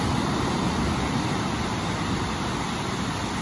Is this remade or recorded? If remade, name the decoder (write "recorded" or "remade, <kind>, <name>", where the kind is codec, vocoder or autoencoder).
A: recorded